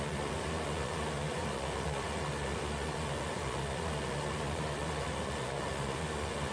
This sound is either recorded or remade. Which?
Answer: remade